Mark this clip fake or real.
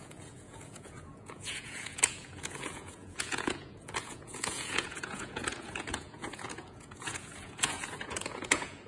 fake